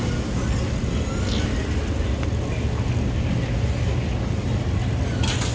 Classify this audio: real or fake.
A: real